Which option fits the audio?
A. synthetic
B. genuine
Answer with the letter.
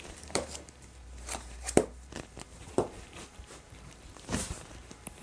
A